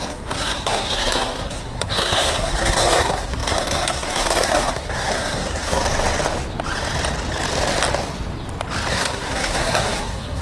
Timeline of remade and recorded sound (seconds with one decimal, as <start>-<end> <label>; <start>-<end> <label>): 0.0-5.8 remade; 5.8-8.9 recorded; 8.9-10.4 remade